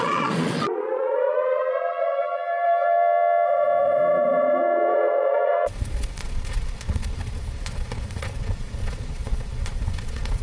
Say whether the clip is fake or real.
fake